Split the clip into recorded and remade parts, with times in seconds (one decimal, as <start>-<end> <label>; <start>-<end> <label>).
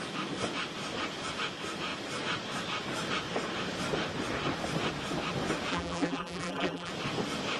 0.0-5.7 recorded; 5.7-6.9 remade; 6.9-7.6 recorded